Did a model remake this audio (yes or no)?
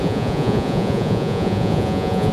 yes